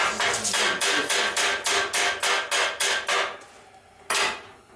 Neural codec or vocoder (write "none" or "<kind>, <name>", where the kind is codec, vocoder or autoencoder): none